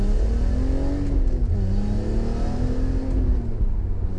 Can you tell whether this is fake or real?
real